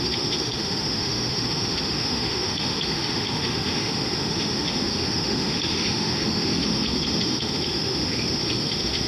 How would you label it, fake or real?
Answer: fake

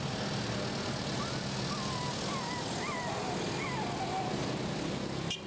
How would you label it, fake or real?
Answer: real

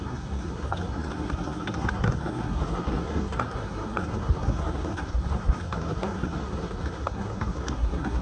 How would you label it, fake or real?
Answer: fake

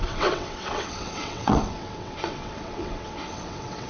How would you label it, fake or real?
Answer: fake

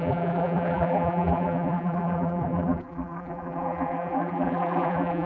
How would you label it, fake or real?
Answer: fake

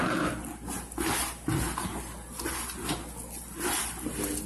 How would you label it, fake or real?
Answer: real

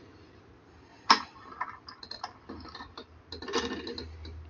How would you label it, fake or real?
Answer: real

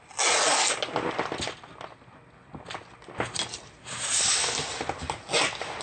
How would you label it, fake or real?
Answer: real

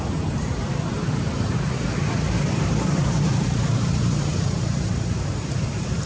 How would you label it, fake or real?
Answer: fake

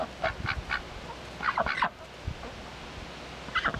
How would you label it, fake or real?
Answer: real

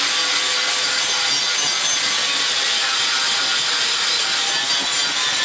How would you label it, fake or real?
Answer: real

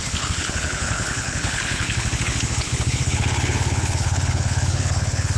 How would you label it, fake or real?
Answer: fake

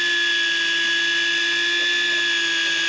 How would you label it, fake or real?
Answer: real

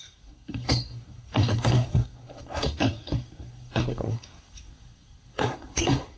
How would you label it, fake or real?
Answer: fake